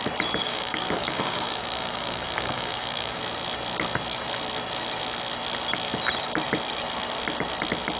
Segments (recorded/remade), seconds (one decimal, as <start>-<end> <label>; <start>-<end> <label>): 0.0-0.4 recorded; 0.4-3.2 remade; 3.2-8.0 recorded